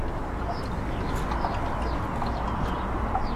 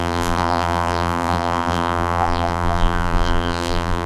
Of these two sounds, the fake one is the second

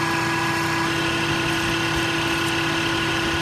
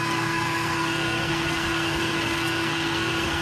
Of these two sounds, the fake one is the second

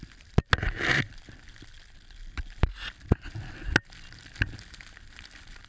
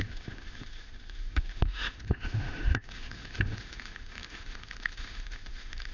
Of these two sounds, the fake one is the second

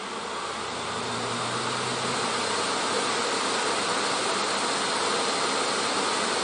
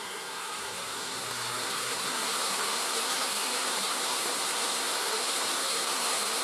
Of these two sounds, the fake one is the second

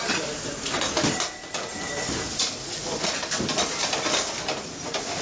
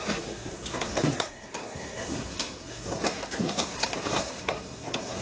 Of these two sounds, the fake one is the second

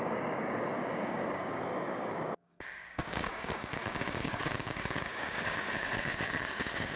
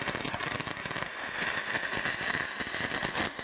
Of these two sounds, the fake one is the first